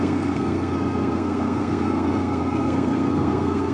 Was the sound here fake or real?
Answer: fake